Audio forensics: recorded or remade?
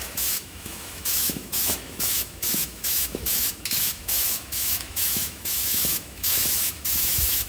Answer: remade